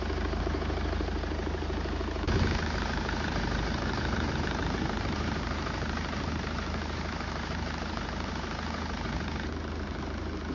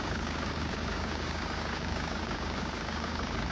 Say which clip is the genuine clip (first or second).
first